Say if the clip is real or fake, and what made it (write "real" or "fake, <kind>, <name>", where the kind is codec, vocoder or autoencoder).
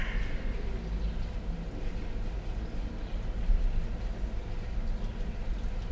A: real